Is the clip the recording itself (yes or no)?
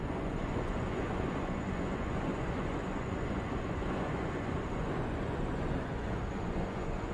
no